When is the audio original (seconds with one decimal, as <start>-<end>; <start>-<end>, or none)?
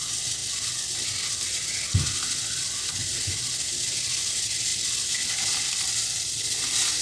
0.0-7.0